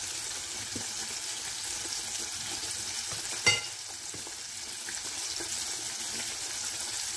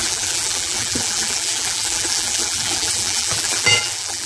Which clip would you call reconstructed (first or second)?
second